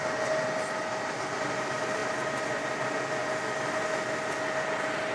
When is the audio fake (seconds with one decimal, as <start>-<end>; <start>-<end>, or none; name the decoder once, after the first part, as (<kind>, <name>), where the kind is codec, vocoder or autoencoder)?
none